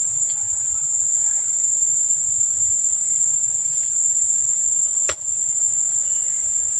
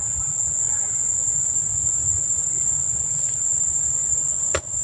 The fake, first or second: first